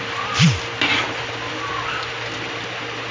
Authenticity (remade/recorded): recorded